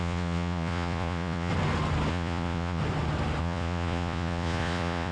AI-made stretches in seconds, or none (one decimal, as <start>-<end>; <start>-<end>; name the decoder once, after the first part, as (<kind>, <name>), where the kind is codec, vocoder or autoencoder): 0.0-1.5 (vocoder, Vocos); 2.1-2.8; 3.4-5.1